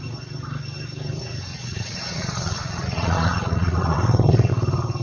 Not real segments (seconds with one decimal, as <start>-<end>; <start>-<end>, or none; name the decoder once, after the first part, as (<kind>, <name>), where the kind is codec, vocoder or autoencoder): 1.5-4.5 (vocoder, Vocos)